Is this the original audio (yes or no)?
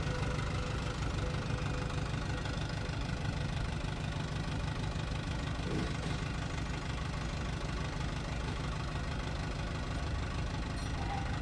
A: yes